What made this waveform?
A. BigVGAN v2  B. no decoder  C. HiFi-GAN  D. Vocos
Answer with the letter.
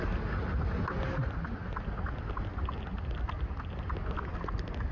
B